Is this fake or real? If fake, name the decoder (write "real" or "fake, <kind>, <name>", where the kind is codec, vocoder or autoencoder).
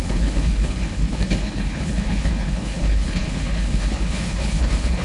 fake, codec, HILCodec